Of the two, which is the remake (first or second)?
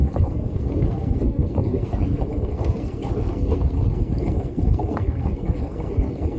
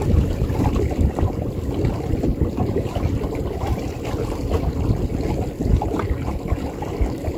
first